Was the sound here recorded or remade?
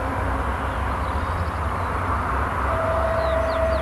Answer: recorded